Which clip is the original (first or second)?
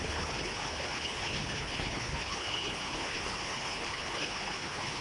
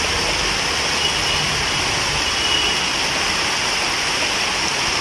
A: second